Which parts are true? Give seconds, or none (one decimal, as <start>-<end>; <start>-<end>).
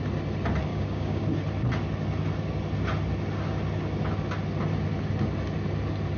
0.0-0.7; 1.2-6.2